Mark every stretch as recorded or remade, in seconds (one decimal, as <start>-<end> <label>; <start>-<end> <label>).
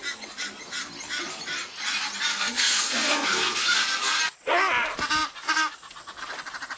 0.0-2.3 recorded; 2.3-4.2 remade; 4.2-6.8 recorded